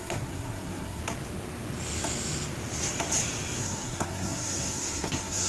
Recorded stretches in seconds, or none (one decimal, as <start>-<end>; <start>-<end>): 1.0-3.6